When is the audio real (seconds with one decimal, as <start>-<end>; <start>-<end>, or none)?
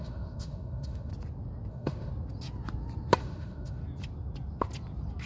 1.1-1.7; 2.1-3.2; 3.8-5.3